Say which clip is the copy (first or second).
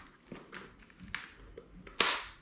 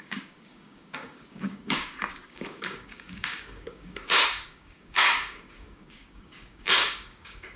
second